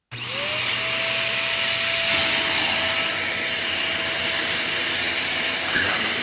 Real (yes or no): yes